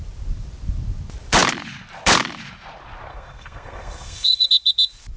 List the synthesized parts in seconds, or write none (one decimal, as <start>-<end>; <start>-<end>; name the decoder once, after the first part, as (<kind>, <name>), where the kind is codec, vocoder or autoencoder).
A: 3.1-4.5 (codec, SNAC)